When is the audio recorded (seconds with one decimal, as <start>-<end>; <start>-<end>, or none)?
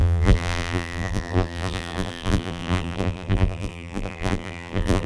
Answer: none